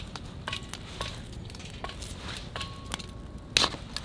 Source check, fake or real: real